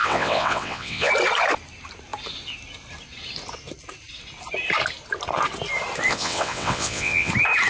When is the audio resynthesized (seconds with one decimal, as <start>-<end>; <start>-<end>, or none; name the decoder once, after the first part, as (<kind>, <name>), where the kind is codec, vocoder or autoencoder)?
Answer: 0.0-1.1 (vocoder, WaveNeXt); 6.1-7.3